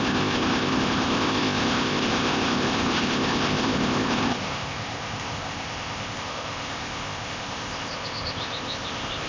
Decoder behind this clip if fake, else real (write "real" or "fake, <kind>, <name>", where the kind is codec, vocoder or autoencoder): fake, codec, ZipCodec